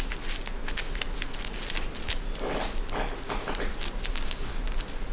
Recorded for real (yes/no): yes